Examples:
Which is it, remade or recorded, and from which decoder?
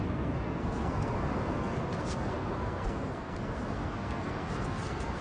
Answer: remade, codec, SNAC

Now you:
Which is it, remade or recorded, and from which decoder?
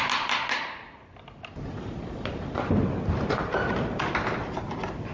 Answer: recorded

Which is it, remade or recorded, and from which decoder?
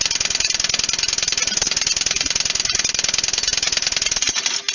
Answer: recorded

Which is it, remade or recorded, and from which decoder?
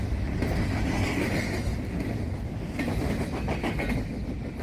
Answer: recorded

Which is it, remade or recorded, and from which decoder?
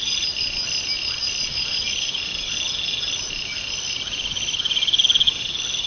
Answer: recorded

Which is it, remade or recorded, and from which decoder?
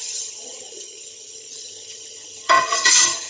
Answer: remade, vocoder, HiFi-GAN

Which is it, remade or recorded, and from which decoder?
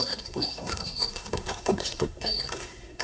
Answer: remade, codec, SNAC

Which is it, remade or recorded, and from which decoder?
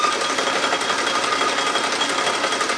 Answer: recorded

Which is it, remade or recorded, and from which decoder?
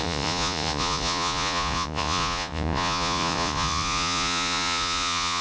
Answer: remade, vocoder, Vocos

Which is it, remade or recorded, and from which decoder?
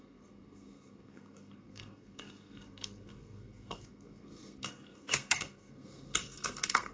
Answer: remade, codec, SNAC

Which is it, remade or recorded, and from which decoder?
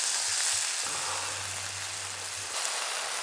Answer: recorded